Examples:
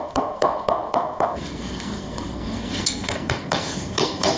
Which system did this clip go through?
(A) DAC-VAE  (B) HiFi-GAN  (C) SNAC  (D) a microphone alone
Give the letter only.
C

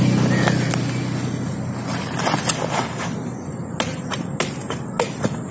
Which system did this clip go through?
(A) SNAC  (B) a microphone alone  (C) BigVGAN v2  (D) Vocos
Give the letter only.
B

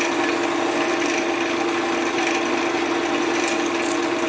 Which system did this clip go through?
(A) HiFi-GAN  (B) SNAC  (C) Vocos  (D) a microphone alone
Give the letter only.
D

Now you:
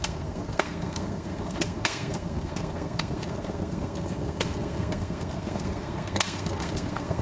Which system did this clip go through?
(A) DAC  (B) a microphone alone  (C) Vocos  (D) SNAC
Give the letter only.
D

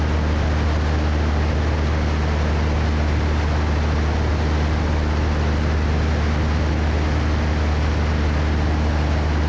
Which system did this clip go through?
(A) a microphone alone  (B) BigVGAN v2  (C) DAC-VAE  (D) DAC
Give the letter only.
A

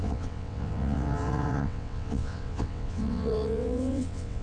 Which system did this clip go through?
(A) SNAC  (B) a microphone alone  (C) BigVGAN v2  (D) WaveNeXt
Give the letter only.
D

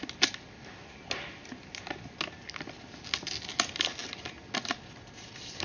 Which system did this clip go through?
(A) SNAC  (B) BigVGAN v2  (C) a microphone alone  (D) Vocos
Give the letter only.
C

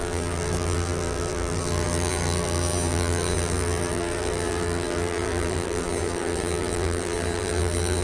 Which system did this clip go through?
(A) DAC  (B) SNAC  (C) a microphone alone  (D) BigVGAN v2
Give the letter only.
D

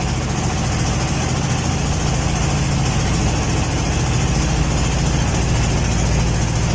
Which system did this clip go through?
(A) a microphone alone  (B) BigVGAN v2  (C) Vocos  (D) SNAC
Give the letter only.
A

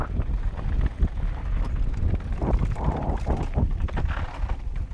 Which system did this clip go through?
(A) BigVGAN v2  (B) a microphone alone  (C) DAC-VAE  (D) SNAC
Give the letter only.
B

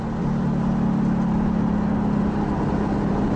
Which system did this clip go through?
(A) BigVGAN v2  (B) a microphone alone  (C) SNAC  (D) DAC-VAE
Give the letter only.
B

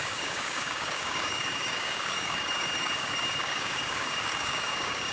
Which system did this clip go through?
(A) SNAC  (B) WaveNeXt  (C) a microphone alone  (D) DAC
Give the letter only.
D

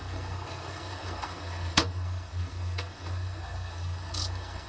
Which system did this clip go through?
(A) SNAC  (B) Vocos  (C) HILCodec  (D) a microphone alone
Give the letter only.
A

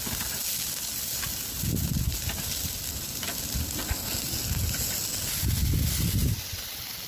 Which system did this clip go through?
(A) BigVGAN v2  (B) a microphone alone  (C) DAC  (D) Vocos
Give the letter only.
B